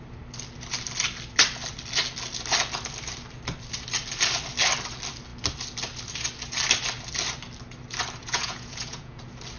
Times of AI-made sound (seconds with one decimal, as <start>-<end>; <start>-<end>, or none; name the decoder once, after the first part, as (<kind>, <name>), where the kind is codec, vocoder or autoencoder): 8.2-9.2 (vocoder, Vocos)